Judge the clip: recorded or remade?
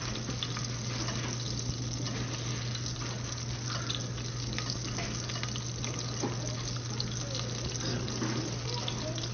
recorded